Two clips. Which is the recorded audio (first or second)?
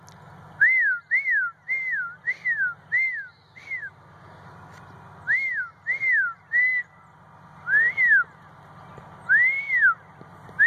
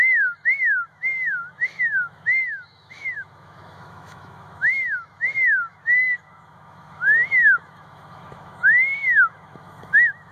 first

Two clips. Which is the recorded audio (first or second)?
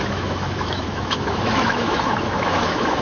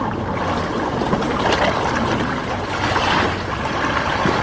second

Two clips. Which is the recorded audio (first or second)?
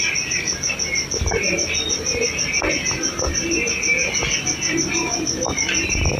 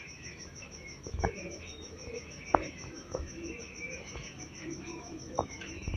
first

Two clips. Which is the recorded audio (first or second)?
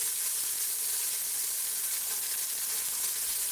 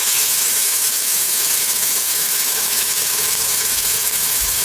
first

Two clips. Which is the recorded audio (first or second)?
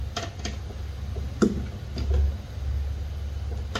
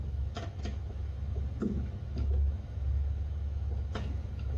first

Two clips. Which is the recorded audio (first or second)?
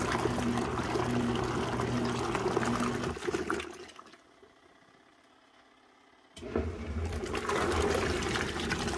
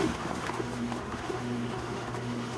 first